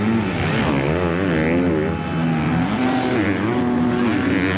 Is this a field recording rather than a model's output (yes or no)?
yes